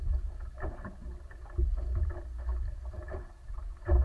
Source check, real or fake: real